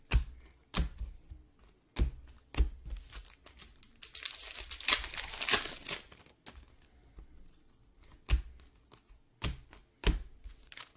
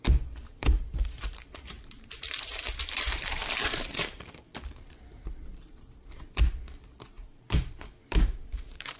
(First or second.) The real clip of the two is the first